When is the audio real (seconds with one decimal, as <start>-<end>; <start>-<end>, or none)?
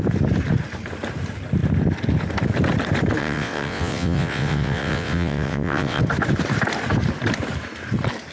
0.0-3.2; 6.0-8.3